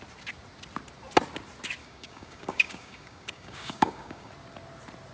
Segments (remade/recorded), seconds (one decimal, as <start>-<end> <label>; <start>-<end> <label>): 0.0-1.8 recorded; 1.8-4.3 remade; 4.3-5.1 recorded